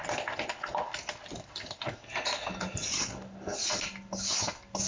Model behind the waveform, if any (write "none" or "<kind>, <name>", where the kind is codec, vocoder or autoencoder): none